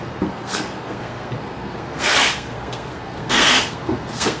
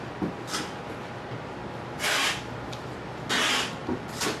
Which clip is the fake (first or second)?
first